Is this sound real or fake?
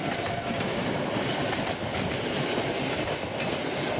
real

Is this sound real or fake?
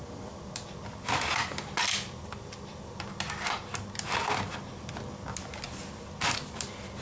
real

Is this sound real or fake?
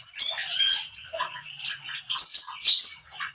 fake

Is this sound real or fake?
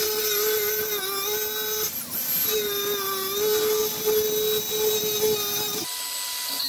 real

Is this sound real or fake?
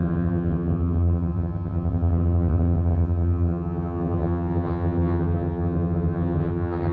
fake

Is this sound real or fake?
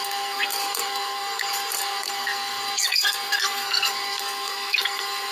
fake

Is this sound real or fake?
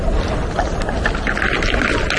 real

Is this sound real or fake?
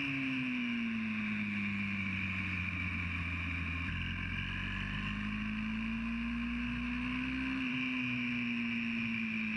real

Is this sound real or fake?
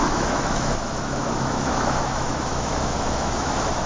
fake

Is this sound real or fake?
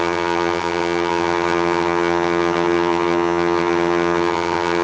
fake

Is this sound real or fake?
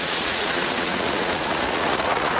fake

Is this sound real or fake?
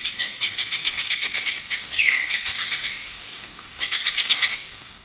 fake